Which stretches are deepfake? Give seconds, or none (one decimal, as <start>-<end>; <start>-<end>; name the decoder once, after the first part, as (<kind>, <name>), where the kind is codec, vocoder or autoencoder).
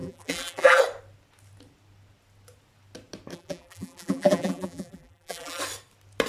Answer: 0.0-0.8 (vocoder, BigVGAN v2); 3.3-5.6